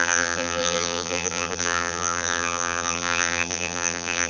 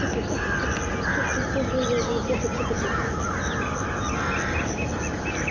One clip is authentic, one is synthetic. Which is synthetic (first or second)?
first